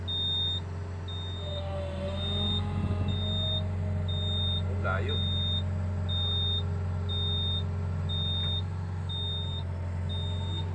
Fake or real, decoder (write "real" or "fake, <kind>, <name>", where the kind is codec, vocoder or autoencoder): real